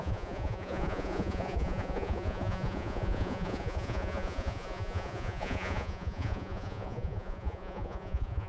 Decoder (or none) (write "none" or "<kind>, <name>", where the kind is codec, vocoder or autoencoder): vocoder, Vocos